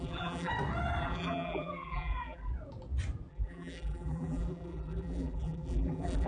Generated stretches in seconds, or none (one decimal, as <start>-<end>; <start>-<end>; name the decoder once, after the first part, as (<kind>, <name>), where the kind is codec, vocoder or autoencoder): 0.0-0.5 (vocoder, BigVGAN v2); 1.0-2.5; 3.3-6.3